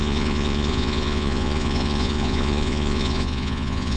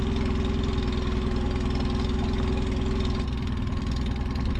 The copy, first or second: first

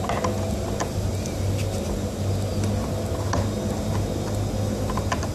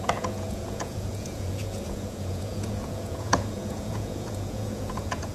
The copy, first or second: second